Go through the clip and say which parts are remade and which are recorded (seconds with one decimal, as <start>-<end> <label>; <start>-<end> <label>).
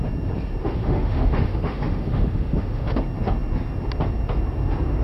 0.0-0.6 recorded; 0.6-3.0 remade; 3.0-5.0 recorded